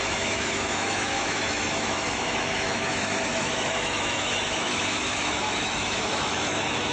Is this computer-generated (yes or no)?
yes